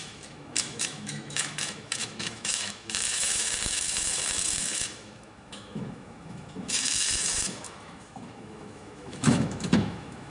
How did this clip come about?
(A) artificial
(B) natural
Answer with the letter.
A